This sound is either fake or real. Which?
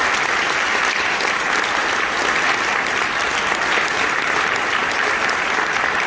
real